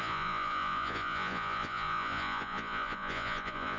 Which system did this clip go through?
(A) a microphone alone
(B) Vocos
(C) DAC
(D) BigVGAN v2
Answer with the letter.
B